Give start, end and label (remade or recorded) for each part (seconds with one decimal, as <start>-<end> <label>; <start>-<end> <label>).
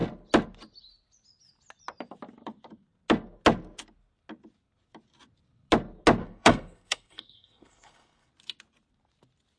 0.0-6.2 recorded; 6.2-8.3 remade; 8.3-9.6 recorded